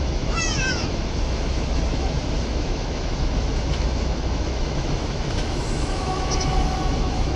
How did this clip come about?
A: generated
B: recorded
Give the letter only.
A